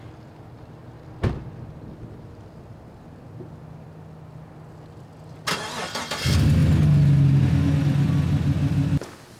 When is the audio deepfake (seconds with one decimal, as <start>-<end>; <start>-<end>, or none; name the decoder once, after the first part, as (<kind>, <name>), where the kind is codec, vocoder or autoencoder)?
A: none